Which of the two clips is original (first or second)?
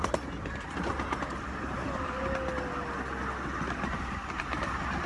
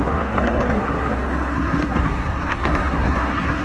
first